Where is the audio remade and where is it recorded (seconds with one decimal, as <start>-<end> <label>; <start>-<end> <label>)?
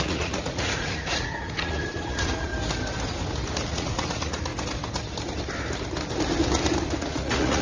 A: 0.0-2.5 remade; 2.5-3.7 recorded; 3.7-4.5 remade; 4.5-7.0 recorded; 7.0-7.6 remade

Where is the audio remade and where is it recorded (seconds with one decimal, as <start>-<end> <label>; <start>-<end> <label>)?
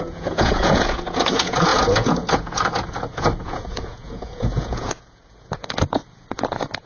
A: 0.0-6.9 remade